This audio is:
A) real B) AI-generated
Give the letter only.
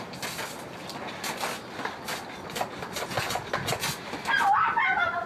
A